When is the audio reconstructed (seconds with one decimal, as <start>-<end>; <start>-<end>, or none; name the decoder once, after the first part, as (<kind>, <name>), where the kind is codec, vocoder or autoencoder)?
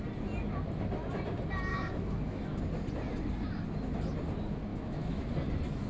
1.7-2.6 (autoencoder, DAC-VAE); 4.7-5.2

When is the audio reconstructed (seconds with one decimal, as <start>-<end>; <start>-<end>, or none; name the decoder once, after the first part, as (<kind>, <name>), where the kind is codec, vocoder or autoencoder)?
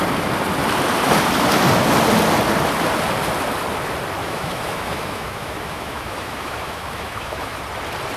4.2-7.6 (autoencoder, DAC-VAE)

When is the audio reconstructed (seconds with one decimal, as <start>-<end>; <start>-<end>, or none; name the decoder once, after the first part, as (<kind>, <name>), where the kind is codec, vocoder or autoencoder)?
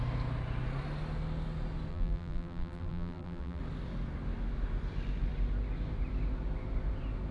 1.9-3.6 (vocoder, BigVGAN v2)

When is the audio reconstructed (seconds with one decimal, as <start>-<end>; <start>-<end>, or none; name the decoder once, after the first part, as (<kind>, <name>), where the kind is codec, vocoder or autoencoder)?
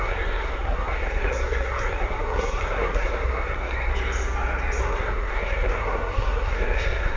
0.0-3.9 (codec, SNAC); 4.8-7.2